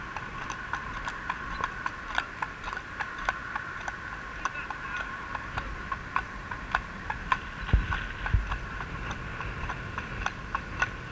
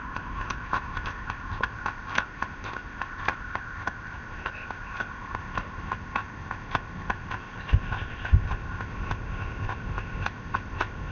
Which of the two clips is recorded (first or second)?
first